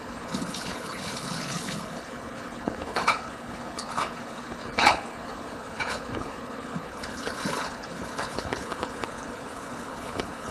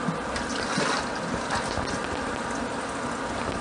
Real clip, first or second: second